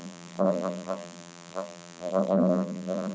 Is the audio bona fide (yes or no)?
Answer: no